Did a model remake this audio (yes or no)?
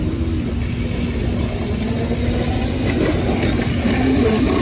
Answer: no